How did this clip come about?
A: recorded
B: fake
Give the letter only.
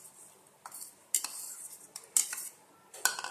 A